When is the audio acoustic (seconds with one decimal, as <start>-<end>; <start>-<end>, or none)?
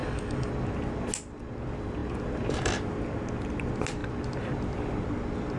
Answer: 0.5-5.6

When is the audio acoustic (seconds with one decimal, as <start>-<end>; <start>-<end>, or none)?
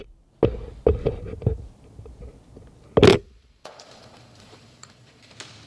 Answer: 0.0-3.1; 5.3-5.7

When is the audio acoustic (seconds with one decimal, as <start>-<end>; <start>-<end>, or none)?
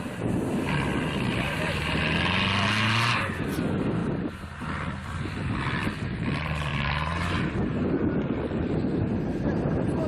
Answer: 0.0-1.3; 2.0-10.1